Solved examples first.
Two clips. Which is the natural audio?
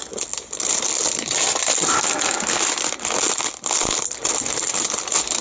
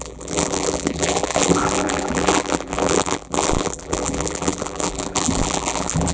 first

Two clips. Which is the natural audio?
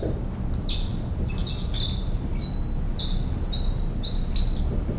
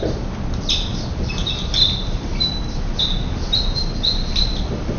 first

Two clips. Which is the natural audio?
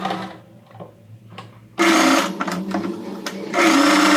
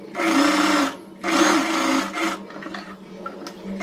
second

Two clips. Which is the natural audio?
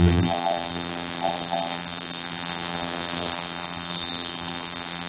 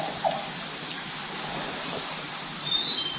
second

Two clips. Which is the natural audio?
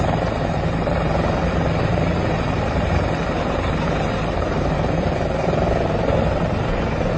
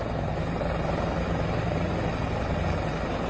second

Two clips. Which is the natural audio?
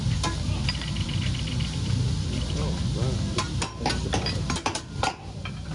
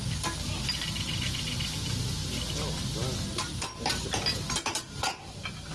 second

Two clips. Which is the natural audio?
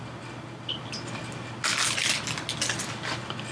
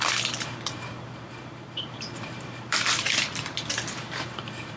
first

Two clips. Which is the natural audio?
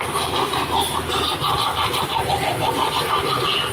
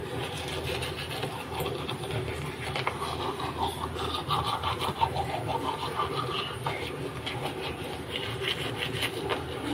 second